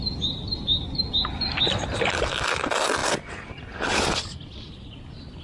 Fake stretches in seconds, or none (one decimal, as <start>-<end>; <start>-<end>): none